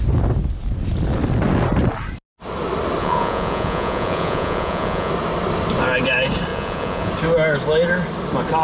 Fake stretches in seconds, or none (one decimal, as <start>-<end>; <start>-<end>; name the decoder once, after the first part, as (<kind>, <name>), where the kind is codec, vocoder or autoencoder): 3.0-5.1 (vocoder, Vocos); 6.5-7.1